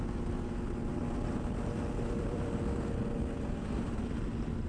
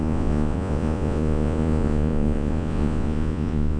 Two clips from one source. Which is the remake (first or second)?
second